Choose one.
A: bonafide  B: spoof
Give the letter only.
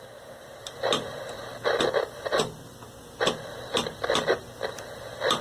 A